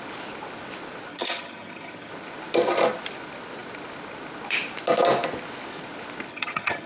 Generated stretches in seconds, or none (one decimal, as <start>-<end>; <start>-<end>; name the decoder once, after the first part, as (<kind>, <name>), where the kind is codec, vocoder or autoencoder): 1.1-2.1 (vocoder, HiFi-GAN); 6.3-6.9